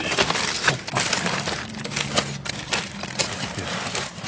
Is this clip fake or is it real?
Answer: real